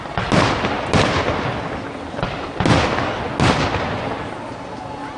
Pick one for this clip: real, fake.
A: real